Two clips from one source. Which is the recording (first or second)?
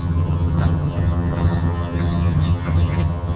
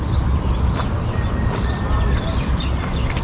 second